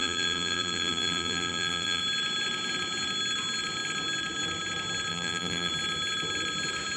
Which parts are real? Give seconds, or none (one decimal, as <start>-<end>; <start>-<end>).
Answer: 2.0-5.1; 5.7-7.0